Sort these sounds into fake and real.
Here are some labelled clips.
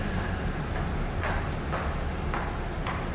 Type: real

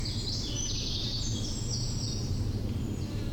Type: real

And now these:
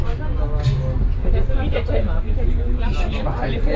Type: real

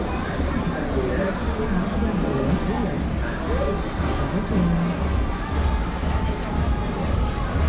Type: real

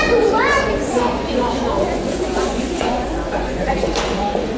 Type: fake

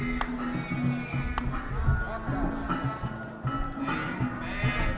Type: real